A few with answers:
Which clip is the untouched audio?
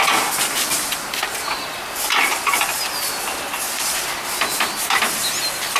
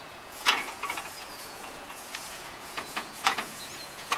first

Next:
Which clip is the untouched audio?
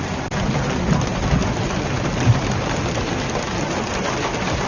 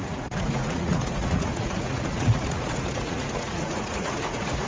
first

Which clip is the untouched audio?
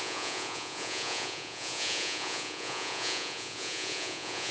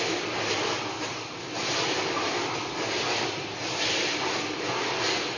second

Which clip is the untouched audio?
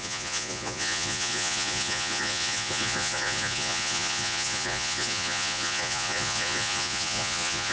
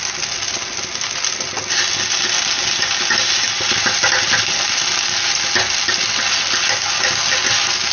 second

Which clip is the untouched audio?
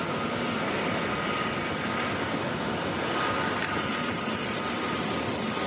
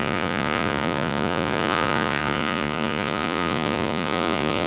first